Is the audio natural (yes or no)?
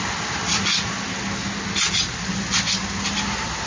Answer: yes